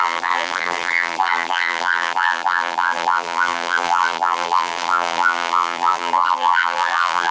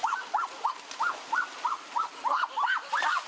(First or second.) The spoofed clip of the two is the first